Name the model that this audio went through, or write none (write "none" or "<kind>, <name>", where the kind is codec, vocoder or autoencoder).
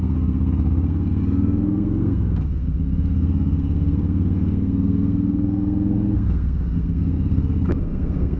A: codec, SNAC